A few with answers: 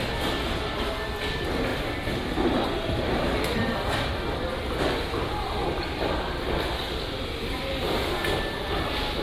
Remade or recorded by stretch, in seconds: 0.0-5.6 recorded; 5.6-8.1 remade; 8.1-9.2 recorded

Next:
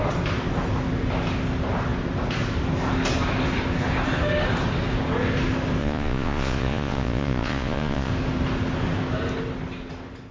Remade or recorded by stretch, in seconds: 0.0-5.8 recorded; 5.8-8.1 remade; 8.1-10.3 recorded